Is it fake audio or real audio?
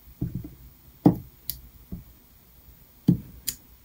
real